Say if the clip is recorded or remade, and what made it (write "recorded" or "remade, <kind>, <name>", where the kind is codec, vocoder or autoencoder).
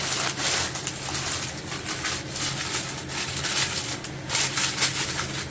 recorded